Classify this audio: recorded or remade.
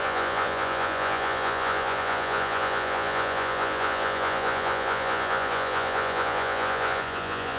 remade